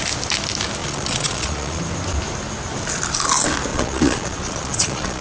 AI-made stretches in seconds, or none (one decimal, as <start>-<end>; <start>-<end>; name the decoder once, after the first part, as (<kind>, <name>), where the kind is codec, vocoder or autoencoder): 0.8-1.8 (vocoder, Vocos); 3.7-5.2